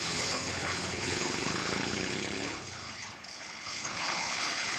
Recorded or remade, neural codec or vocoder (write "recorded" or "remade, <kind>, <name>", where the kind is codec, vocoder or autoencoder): remade, codec, HILCodec